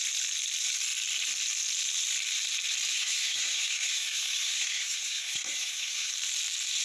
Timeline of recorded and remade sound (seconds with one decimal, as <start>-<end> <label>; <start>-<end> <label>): 0.0-2.9 recorded; 2.9-6.1 remade; 6.1-6.8 recorded